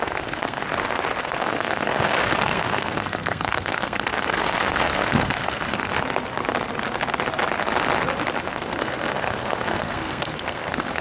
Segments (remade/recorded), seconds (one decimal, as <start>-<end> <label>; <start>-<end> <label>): 0.0-0.6 remade; 0.6-1.2 recorded; 1.2-5.9 remade; 5.9-8.4 recorded; 8.4-11.0 remade